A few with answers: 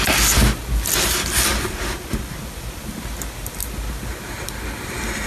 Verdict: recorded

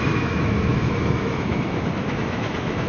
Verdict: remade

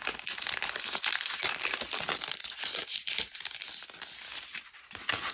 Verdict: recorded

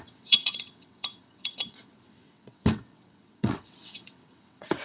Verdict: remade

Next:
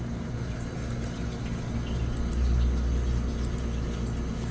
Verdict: recorded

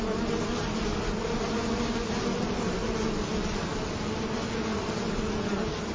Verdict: recorded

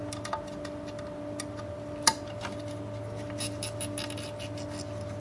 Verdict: recorded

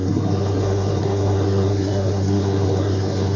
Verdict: remade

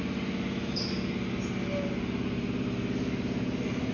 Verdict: recorded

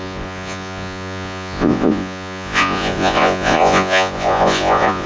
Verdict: remade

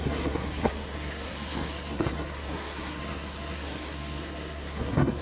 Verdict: remade